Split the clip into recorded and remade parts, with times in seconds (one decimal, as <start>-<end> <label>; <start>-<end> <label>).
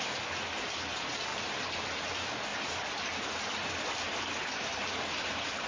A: 0.0-5.7 recorded